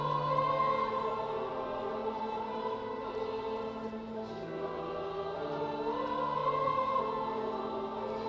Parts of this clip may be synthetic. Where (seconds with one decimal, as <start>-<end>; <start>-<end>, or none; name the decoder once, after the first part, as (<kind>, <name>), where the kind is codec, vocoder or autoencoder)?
2.0-4.3 (vocoder, BigVGAN v2); 6.4-7.0